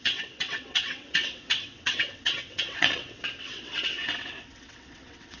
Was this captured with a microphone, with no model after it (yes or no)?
no